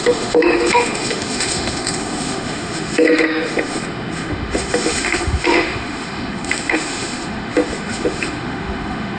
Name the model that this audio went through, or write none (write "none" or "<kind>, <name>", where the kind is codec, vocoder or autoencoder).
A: autoencoder, DAC-VAE